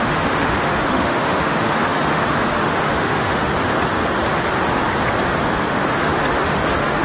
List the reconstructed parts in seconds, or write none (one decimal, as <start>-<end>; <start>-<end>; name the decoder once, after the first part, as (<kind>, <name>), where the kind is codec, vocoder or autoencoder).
0.0-3.5 (autoencoder, DAC-VAE); 5.7-7.0